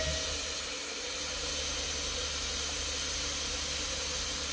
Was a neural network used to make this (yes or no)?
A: no